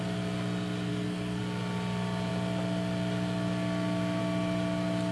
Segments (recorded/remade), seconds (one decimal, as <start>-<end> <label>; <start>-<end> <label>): 0.0-0.9 recorded; 0.9-1.4 remade; 1.4-5.1 recorded